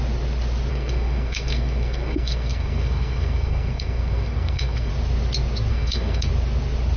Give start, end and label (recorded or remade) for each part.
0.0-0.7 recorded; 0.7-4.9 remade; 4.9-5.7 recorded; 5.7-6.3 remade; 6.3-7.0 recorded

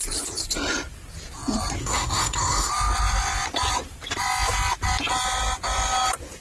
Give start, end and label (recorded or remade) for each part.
0.0-1.8 recorded; 1.8-2.7 remade; 2.7-6.4 recorded

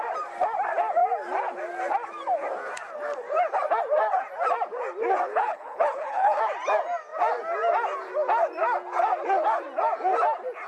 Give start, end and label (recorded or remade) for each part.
0.0-5.3 recorded; 5.3-6.4 remade; 6.4-10.7 recorded

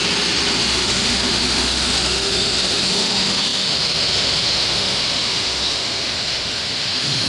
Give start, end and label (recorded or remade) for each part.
0.0-0.5 recorded; 0.5-7.3 remade